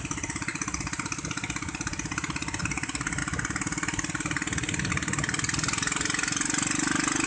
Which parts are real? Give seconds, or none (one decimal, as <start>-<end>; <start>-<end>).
0.0-7.3